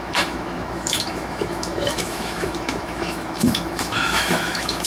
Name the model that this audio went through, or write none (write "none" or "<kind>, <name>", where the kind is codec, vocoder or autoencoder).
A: autoencoder, DAC-VAE